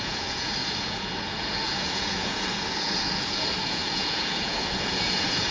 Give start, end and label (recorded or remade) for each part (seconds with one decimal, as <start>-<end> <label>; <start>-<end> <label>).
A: 0.0-5.5 remade